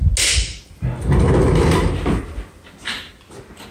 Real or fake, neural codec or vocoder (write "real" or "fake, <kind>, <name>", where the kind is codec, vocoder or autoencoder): real